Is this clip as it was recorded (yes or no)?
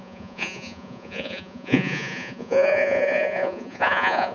no